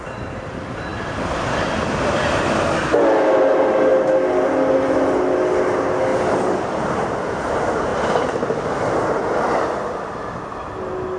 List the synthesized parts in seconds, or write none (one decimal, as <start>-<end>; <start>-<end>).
none